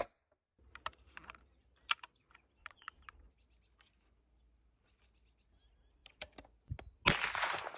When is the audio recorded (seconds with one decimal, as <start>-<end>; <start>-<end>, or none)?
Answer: 0.0-2.6; 3.3-7.8